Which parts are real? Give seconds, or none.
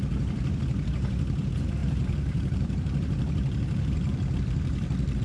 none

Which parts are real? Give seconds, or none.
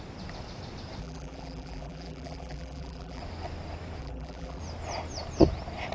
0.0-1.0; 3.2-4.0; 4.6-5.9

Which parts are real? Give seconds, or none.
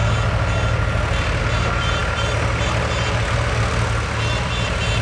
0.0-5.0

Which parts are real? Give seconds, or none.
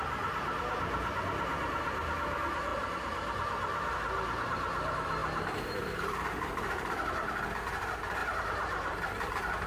0.0-5.2; 7.4-8.2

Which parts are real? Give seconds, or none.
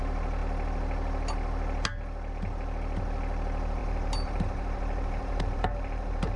0.0-3.8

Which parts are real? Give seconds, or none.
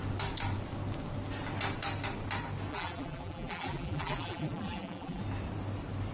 0.0-2.7; 5.2-6.1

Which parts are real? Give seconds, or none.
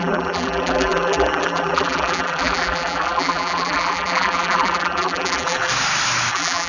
5.7-6.3